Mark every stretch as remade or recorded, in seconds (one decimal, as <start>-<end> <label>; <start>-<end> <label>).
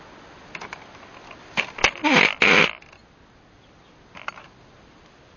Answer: 0.0-5.4 recorded